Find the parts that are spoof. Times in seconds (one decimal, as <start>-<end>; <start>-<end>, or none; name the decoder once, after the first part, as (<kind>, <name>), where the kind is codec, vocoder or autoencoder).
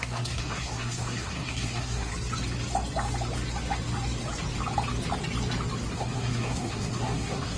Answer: 0.0-2.1 (codec, SNAC); 5.9-7.6